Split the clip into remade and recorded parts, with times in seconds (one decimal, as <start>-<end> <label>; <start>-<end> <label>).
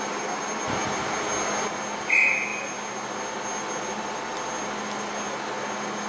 0.0-6.1 recorded